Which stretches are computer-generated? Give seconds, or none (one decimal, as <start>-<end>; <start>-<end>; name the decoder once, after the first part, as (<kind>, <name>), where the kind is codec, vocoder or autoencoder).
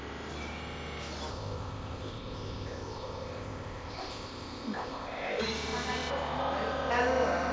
1.3-5.4 (codec, ZipCodec)